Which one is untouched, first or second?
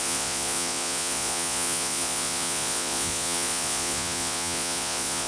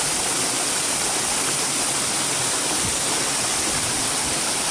second